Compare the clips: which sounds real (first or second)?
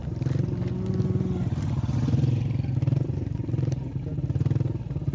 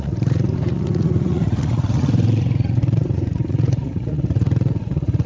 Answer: first